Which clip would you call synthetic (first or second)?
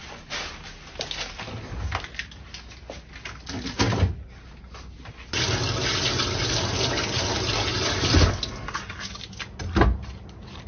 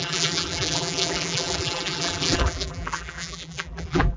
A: second